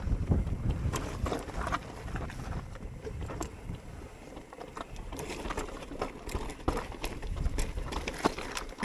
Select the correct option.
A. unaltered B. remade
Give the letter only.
B